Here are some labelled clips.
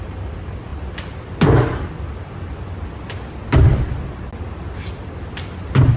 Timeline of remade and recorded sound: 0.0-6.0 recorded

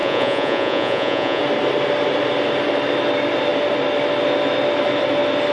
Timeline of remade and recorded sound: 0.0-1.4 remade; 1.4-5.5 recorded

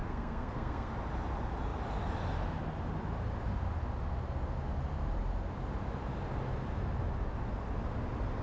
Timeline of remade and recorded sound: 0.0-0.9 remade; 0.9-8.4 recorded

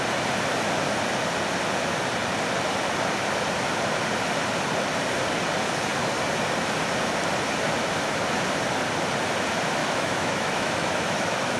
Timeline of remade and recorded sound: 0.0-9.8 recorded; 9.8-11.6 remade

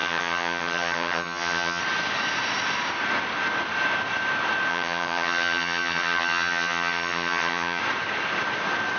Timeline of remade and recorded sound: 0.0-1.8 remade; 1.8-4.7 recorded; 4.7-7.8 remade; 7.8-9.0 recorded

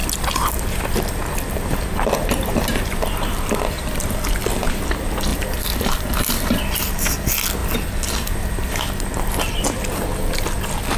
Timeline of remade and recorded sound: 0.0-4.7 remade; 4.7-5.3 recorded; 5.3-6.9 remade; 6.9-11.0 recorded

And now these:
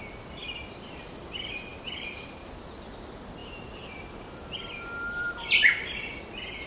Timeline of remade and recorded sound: 0.0-0.4 recorded; 0.4-1.2 remade; 1.2-1.7 recorded; 1.7-2.9 remade; 2.9-3.4 recorded; 3.4-6.2 remade; 6.2-6.7 recorded